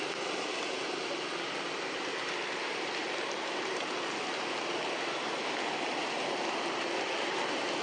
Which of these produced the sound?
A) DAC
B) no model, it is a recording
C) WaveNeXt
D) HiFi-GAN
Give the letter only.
B